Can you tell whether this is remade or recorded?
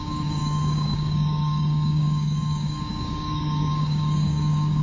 remade